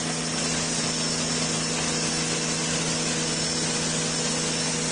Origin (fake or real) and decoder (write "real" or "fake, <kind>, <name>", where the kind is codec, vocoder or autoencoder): real